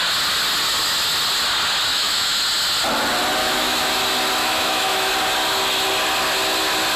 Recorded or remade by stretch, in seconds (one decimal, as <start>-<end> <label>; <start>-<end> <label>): 0.0-1.9 recorded; 1.9-2.4 remade; 2.4-3.4 recorded; 3.4-3.9 remade; 3.9-4.4 recorded; 4.4-5.1 remade; 5.1-7.0 recorded